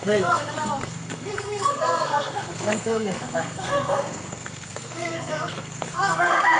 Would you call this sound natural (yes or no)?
no